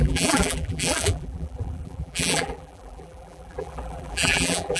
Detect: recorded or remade remade